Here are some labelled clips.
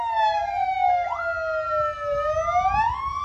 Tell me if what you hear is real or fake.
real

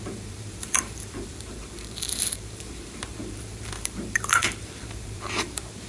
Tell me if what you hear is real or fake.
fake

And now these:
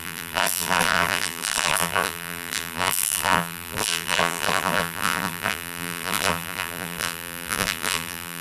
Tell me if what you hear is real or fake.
fake